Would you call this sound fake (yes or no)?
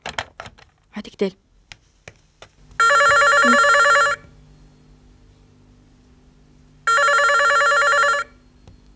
no